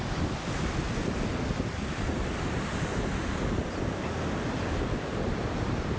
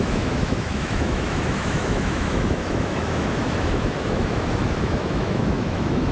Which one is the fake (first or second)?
second